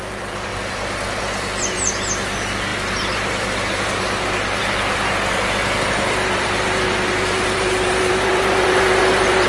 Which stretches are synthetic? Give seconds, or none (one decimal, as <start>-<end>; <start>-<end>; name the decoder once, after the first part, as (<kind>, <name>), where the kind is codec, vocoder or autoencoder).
0.0-0.5 (vocoder, BigVGAN v2); 1.2-9.5